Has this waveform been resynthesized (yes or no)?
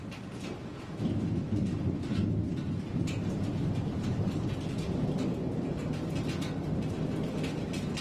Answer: no